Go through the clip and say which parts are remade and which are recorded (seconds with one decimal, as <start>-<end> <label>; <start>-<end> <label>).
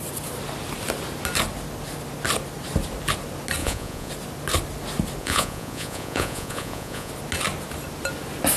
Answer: 0.0-3.6 recorded; 3.6-4.1 remade; 4.1-5.2 recorded; 5.2-7.1 remade; 7.1-8.6 recorded